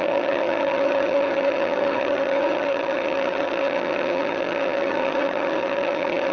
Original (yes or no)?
no